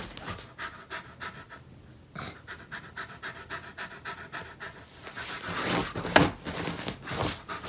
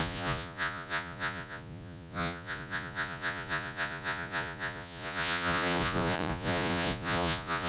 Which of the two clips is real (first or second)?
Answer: first